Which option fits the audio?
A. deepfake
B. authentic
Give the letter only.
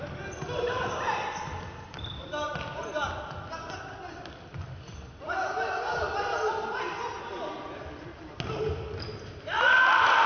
B